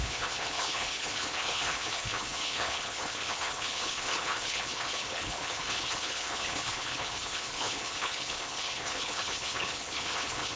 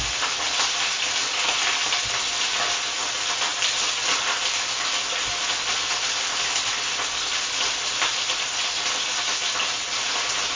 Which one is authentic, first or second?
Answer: second